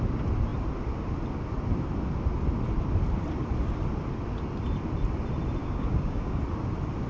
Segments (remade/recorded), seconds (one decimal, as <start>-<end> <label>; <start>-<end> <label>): 0.0-5.6 recorded; 5.6-6.4 remade; 6.4-7.1 recorded